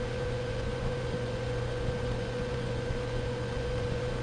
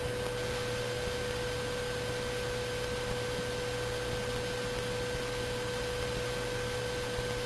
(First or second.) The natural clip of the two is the second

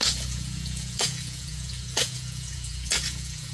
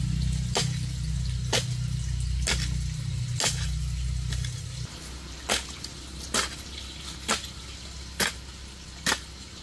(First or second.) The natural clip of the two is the second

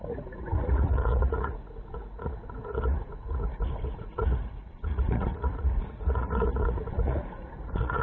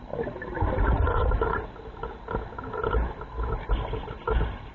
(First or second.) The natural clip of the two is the second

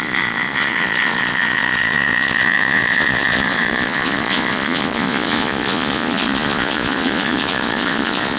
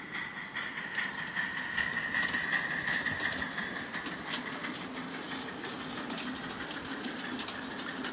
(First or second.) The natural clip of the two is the second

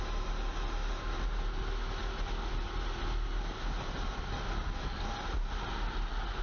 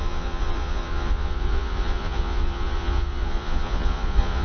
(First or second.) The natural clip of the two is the first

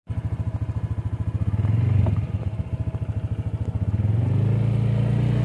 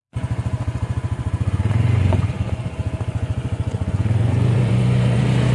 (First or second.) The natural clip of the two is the first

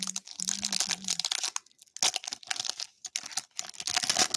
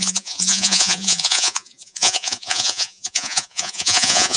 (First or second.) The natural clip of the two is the first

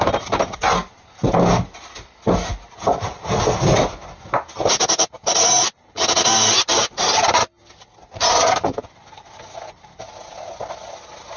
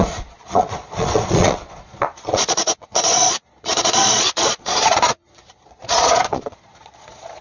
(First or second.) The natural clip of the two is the first